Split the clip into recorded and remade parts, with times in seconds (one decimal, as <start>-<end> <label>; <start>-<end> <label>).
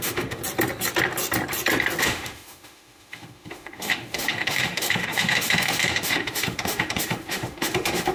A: 0.0-0.4 remade; 0.4-2.0 recorded; 2.0-8.1 remade